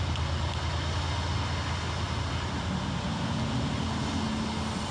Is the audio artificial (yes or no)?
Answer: no